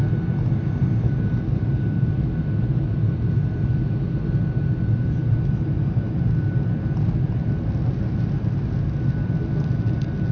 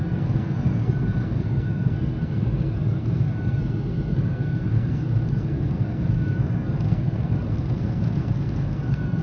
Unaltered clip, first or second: first